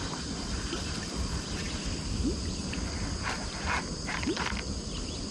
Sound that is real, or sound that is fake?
real